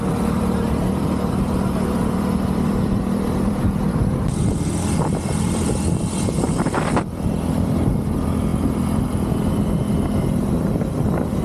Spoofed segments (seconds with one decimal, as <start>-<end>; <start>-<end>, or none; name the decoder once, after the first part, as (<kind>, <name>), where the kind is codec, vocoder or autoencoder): 0.0-8.5 (vocoder, BigVGAN v2); 10.9-11.4